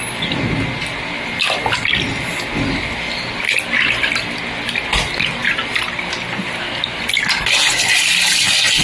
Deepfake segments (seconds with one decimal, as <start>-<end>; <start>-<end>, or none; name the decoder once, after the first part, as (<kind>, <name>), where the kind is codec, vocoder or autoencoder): none